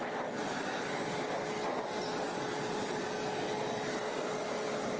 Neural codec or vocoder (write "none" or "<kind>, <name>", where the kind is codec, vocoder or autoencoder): none